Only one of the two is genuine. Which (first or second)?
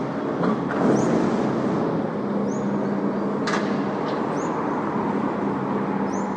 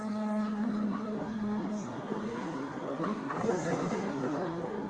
first